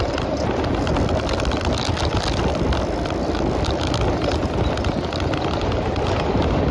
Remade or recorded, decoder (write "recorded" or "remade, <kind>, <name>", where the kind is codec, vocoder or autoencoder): recorded